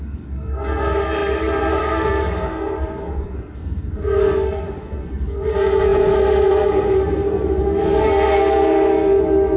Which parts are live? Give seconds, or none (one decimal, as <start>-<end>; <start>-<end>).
none